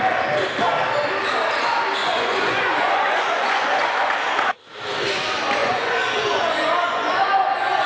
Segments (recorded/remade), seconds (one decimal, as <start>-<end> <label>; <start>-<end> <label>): 0.0-2.0 recorded; 2.0-4.1 remade; 4.1-5.6 recorded; 5.6-7.9 remade